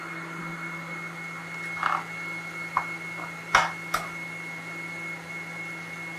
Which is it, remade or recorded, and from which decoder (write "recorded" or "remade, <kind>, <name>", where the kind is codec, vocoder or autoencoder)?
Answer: recorded